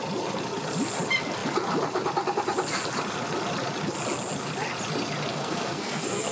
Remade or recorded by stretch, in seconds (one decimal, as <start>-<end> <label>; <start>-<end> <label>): 0.0-5.3 recorded; 5.3-6.3 remade